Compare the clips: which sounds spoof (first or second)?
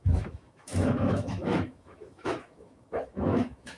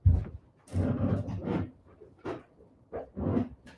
first